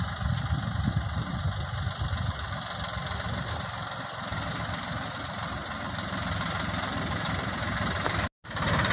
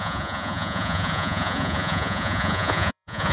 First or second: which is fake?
second